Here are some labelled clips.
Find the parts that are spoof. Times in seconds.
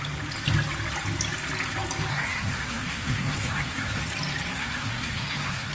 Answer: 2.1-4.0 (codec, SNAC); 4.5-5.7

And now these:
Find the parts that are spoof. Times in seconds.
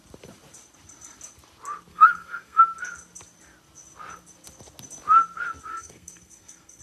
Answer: 1.9-2.6 (codec, SNAC); 5.7-6.8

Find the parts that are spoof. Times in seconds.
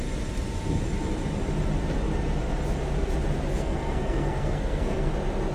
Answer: 3.5-5.1 (codec, SNAC)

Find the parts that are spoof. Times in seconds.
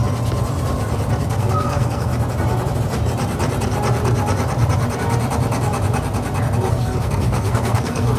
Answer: 1.2-2.1 (codec, SNAC); 6.7-8.2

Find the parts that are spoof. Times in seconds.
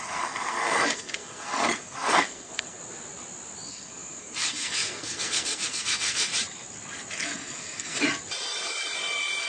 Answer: 0.0-2.8 (codec, SNAC); 3.7-6.3; 7.1-8.0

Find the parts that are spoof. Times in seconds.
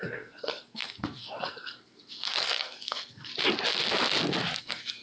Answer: 0.0-3.3 (codec, SNAC); 4.6-5.0